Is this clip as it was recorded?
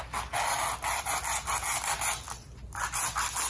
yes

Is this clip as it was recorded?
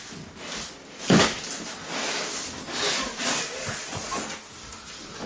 yes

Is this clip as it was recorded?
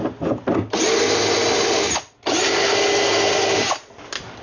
yes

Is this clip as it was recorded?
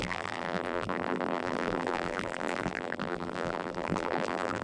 no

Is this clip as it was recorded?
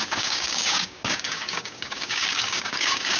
no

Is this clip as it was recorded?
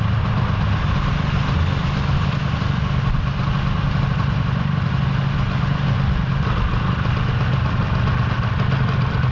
yes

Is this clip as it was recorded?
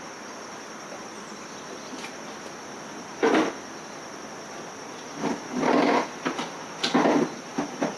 yes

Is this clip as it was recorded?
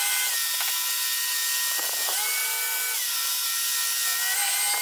yes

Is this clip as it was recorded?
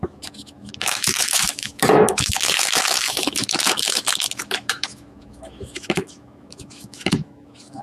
no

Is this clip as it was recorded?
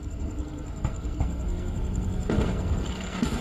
no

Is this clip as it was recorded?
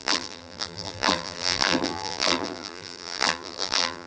no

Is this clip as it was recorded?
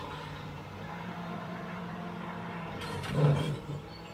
no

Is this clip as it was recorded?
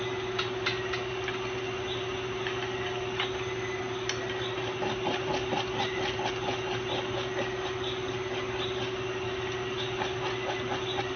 yes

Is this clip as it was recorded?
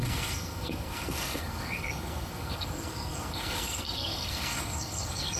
no